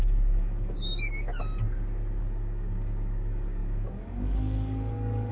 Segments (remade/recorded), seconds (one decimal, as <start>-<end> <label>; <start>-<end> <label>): 0.0-1.4 remade; 1.4-2.2 recorded; 2.2-5.3 remade